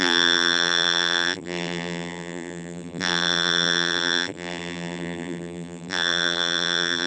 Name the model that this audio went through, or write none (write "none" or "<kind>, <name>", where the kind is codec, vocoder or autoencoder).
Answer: vocoder, BigVGAN v2